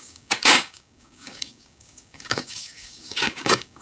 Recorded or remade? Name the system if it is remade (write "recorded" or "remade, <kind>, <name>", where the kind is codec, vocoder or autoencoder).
remade, codec, DAC